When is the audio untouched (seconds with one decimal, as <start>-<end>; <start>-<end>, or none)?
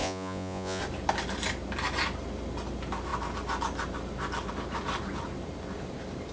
0.8-6.3